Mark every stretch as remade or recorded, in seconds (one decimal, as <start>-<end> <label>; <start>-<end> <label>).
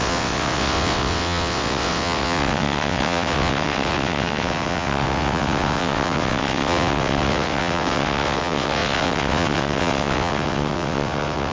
0.0-11.5 remade